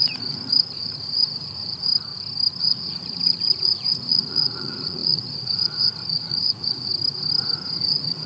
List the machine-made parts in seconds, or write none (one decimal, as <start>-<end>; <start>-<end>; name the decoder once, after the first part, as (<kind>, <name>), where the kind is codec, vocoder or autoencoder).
0.0-1.9 (vocoder, Vocos); 2.6-6.9; 7.8-8.3